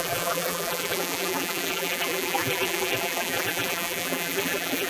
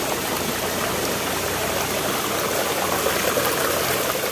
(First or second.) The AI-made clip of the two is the first